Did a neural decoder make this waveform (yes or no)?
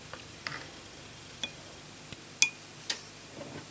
no